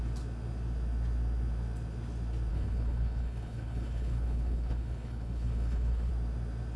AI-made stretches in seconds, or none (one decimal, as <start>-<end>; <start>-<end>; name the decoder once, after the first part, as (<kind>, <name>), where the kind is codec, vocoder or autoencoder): 2.5-6.1 (codec, HILCodec)